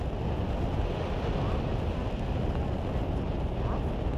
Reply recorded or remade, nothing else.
recorded